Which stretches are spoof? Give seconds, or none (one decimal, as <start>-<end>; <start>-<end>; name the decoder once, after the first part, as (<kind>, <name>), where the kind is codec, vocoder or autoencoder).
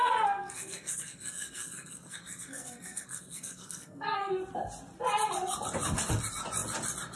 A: 0.0-4.3 (codec, SNAC)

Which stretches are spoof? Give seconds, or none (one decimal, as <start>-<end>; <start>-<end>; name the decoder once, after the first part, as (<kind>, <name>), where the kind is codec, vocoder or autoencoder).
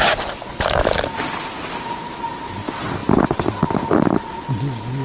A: none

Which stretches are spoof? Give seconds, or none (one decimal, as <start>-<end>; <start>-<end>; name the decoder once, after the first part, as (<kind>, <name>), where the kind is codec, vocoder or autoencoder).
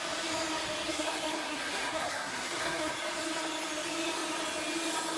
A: 0.9-2.9 (codec, SNAC)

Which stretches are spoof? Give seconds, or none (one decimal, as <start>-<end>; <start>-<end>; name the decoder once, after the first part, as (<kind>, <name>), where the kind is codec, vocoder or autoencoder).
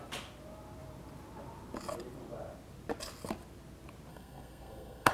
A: 4.1-5.1 (codec, SNAC)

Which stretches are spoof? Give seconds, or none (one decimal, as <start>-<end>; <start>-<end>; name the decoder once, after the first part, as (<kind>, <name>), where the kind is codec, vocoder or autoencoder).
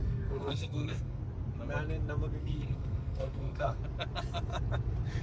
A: 0.0-1.2 (codec, SNAC); 2.4-3.8